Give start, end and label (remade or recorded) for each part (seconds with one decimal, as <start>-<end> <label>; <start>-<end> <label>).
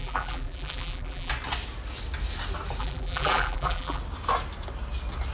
0.0-1.3 remade; 1.3-2.8 recorded; 2.8-4.0 remade; 4.0-5.3 recorded